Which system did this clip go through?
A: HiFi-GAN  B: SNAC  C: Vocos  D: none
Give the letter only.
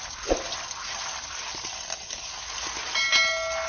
D